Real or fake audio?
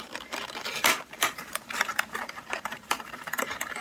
fake